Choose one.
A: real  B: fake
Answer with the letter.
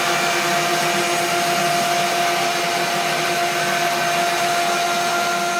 A